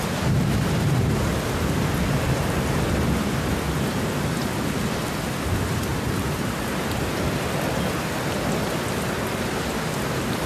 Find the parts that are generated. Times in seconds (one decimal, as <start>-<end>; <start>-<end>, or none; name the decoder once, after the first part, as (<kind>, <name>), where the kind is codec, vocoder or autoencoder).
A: 0.0-4.4 (vocoder, BigVGAN v2); 5.9-6.9